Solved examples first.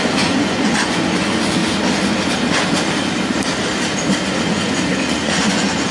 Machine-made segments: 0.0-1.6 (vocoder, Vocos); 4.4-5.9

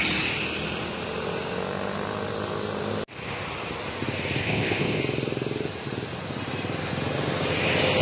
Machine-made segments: 4.4-5.0 (codec, ZipCodec)

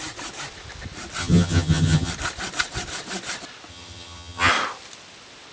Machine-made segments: 1.2-2.1 (vocoder, HiFi-GAN); 3.7-4.5

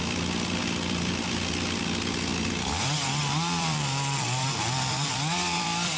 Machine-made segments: 0.0-6.0 (vocoder, BigVGAN v2)